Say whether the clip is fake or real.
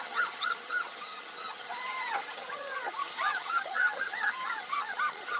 fake